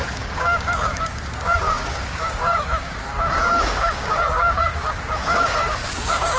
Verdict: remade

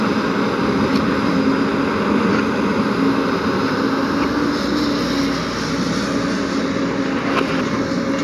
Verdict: recorded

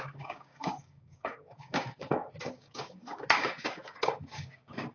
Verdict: remade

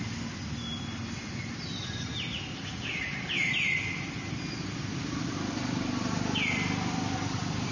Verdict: recorded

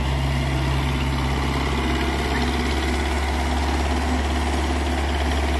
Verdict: recorded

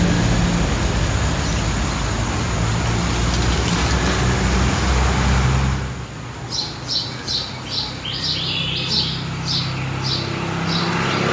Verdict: recorded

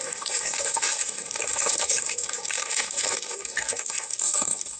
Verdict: remade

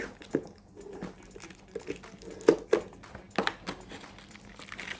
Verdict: recorded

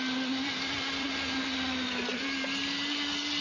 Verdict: recorded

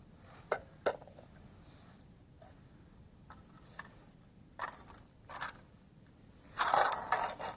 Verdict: recorded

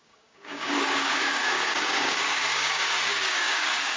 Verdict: remade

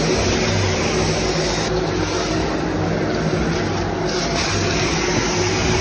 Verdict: recorded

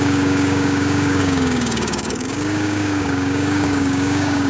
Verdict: remade